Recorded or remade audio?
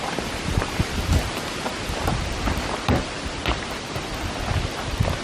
remade